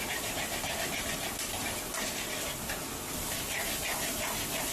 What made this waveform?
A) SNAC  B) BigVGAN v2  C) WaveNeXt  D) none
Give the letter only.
D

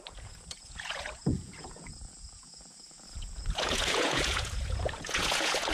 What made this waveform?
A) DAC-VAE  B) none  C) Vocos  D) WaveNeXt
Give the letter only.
C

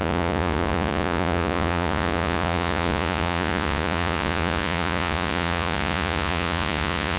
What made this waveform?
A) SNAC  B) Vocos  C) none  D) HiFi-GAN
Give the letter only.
B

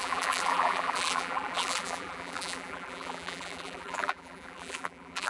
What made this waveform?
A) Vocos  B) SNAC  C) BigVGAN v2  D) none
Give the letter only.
C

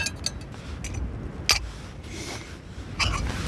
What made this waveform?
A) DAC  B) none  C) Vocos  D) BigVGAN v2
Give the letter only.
B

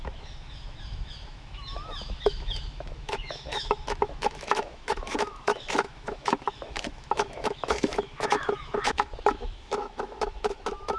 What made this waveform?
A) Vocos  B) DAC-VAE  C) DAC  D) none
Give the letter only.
B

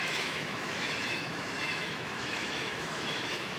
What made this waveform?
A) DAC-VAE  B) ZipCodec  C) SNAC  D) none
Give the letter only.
A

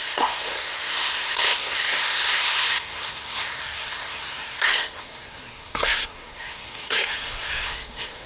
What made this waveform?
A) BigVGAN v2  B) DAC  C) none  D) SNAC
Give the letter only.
D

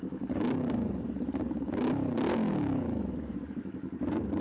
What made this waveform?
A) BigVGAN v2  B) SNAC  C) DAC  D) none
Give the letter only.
C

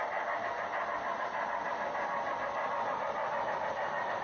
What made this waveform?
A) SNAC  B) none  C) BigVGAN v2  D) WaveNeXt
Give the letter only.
B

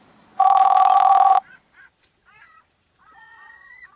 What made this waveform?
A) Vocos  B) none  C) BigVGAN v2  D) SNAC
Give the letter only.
A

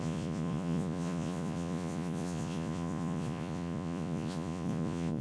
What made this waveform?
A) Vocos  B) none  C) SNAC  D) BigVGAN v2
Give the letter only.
A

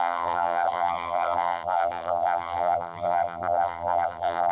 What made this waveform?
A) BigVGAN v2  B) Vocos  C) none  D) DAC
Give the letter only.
A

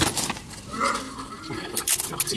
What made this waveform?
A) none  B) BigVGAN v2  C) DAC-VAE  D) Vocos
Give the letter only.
A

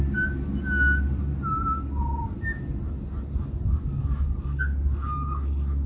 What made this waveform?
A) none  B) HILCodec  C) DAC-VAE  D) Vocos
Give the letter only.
A